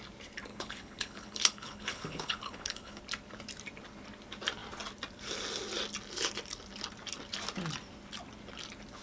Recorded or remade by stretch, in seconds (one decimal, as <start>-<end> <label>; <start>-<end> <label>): 0.0-0.5 recorded; 0.5-3.0 remade; 3.0-9.0 recorded